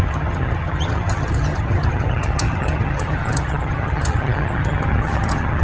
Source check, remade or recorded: remade